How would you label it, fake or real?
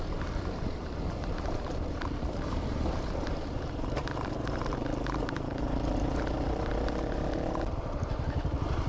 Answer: fake